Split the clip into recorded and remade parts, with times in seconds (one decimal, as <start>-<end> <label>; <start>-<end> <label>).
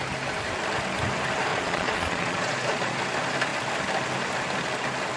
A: 0.0-1.5 recorded; 1.5-3.0 remade; 3.0-5.2 recorded